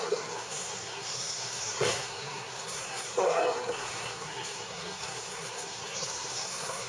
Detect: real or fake fake